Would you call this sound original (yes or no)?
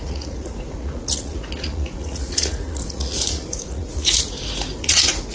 no